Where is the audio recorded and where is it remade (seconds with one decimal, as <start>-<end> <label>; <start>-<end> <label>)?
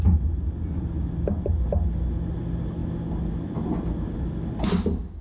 0.0-5.2 recorded